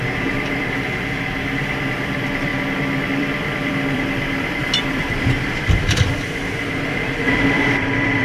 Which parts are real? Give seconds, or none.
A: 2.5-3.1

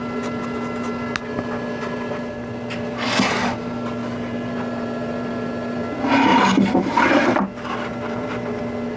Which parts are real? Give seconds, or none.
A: 0.0-6.3; 7.4-7.9; 8.6-9.0

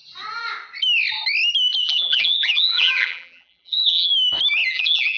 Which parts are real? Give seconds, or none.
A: 0.0-1.8; 4.1-4.7

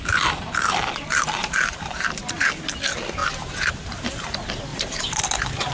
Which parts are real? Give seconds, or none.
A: 0.0-1.4; 2.5-3.2; 3.7-4.7; 5.2-5.7

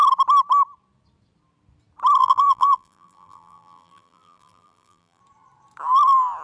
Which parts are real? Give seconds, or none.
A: 0.0-2.2; 5.2-6.4

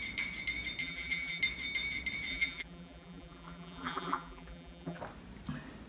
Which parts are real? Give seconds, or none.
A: 0.0-0.8; 1.4-2.3; 5.0-5.9

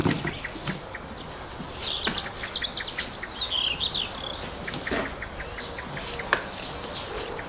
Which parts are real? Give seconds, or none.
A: 0.0-1.6; 2.7-6.7